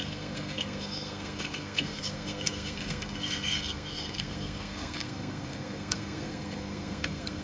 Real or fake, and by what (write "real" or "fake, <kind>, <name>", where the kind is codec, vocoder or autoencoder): fake, codec, SNAC